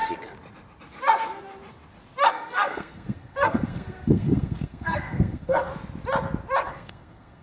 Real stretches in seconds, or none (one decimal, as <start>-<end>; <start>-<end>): 0.0-2.3; 5.7-6.7